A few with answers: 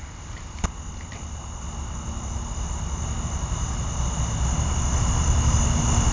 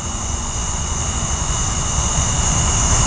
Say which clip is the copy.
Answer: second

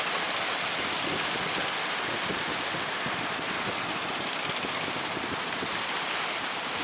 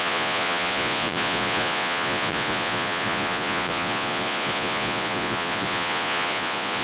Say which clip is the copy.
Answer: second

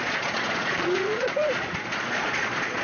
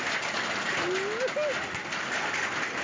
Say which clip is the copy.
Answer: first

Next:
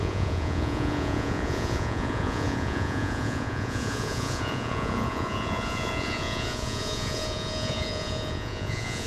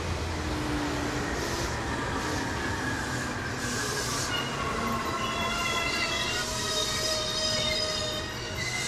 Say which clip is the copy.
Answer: first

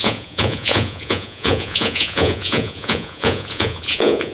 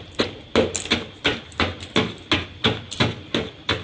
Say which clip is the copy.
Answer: first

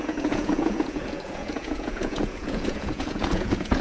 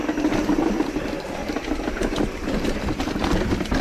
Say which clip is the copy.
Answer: first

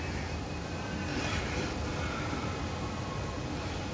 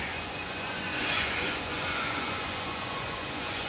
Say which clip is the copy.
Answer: second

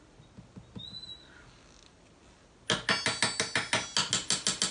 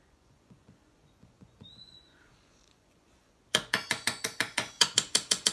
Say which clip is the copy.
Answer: second